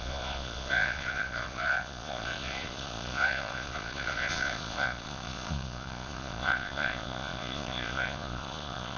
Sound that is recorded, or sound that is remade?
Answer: remade